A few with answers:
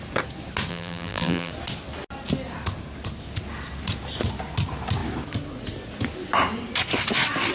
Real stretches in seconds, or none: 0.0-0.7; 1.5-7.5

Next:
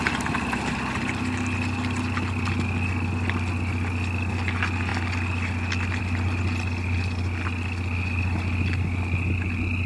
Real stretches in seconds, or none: 0.0-9.9

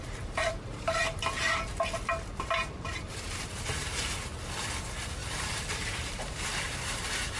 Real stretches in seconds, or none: 1.0-2.1; 4.3-4.8

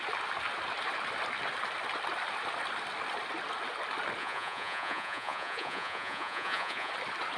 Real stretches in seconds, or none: 0.0-4.2; 6.9-7.4

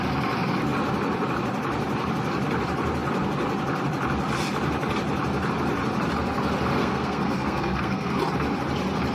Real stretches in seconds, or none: 0.0-6.8; 8.2-9.1

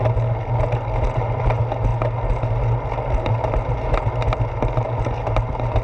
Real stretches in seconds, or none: 0.0-5.8